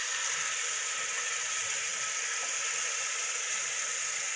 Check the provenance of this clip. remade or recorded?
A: recorded